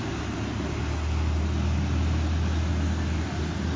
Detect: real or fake real